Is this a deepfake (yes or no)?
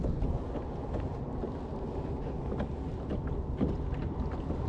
no